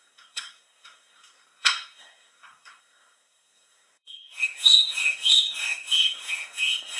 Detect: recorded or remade remade